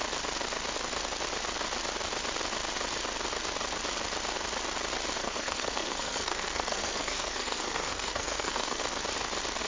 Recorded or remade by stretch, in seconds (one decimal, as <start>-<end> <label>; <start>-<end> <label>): 0.0-5.2 recorded; 5.2-8.8 remade; 8.8-9.7 recorded